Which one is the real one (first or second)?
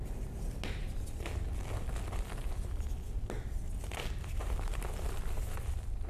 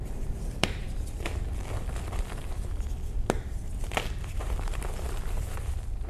first